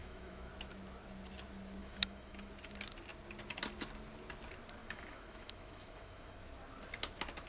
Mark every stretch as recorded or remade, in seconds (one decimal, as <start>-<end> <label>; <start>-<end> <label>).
0.0-0.5 remade; 0.5-1.8 recorded; 1.8-2.5 remade; 2.5-4.8 recorded; 4.8-6.4 remade; 6.4-7.5 recorded